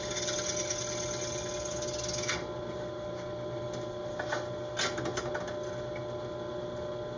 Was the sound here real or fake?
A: real